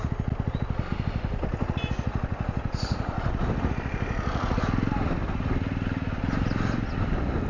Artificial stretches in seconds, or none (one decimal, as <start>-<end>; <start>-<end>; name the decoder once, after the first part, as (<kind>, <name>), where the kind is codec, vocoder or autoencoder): none